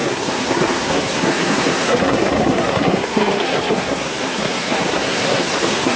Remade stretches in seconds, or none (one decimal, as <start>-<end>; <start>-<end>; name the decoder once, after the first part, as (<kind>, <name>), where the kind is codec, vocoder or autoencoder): 0.0-6.0 (codec, SNAC)